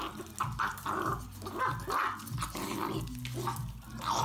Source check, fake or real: real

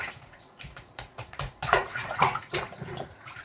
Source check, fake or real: fake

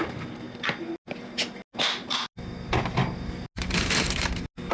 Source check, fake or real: real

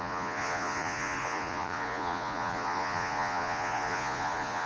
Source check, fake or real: fake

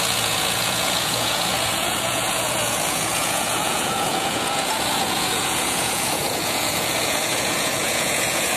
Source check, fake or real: fake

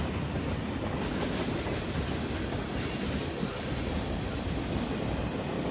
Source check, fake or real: real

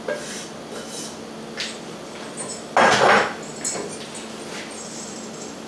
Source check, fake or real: real